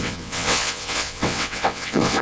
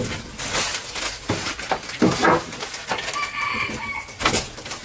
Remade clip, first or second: first